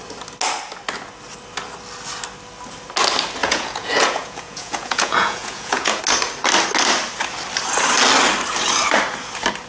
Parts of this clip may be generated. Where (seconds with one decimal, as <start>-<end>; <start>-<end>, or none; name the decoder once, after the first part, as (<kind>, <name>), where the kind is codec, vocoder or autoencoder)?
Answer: 3.4-6.0 (vocoder, Vocos)